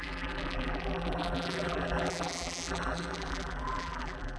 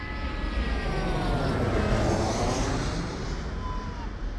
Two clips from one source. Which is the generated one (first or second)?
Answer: first